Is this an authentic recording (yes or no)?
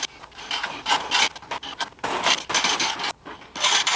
yes